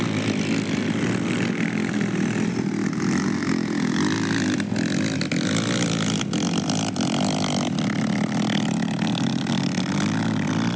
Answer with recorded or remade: recorded